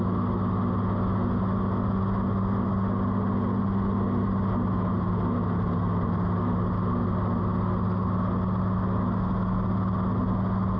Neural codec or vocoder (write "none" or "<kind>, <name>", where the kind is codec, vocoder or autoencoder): none